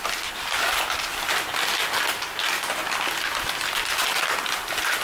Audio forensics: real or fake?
real